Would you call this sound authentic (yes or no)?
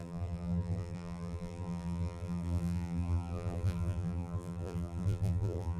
no